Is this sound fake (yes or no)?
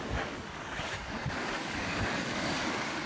yes